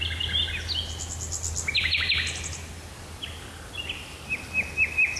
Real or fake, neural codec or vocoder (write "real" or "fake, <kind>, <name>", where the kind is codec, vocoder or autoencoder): real